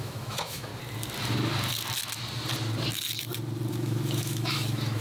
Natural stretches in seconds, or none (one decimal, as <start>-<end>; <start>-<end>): 0.7-3.7